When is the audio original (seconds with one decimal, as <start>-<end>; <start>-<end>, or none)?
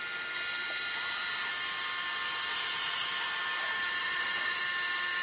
0.0-2.5; 3.1-4.0; 4.6-5.2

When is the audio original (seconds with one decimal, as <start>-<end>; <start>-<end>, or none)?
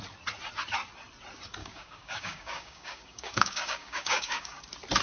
0.0-1.6; 4.6-5.0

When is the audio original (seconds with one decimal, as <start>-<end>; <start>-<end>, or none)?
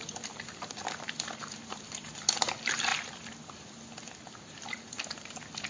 2.9-5.7